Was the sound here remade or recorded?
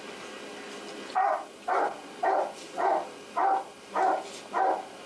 recorded